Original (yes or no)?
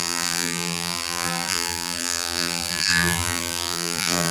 no